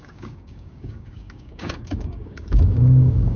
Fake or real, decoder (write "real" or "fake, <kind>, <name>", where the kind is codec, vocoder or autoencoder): fake, codec, DAC